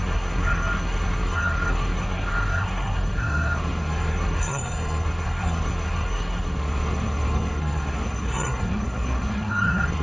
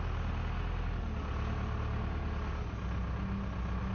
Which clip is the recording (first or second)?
second